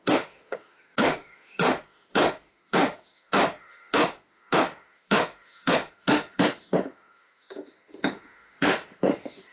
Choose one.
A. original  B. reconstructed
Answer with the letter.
B